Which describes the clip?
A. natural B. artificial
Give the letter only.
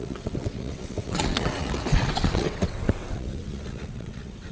B